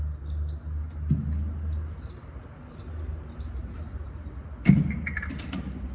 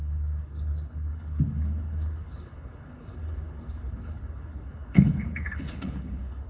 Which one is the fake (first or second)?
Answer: second